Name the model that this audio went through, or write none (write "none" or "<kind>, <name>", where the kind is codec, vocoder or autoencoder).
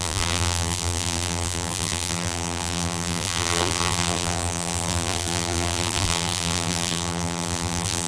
vocoder, BigVGAN v2